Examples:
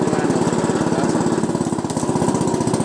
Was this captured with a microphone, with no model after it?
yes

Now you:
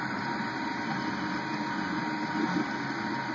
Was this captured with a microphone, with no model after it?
yes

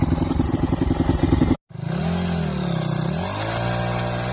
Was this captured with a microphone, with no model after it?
yes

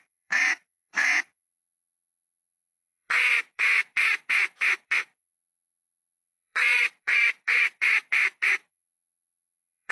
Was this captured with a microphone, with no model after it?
no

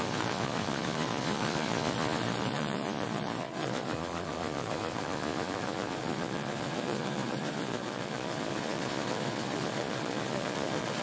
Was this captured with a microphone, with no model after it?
no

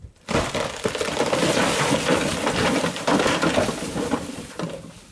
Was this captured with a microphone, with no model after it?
yes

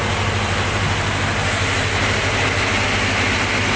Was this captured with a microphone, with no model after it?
yes